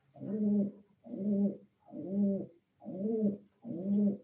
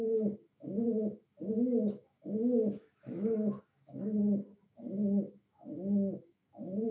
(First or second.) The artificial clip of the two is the second